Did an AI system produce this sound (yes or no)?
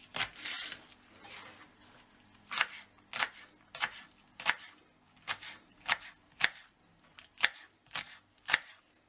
no